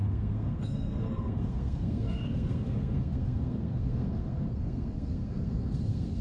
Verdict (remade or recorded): remade